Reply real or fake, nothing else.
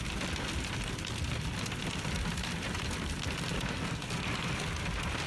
real